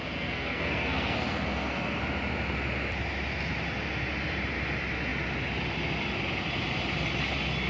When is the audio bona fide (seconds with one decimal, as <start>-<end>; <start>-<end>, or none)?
2.0-7.7